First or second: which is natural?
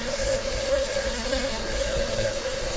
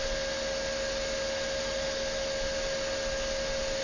second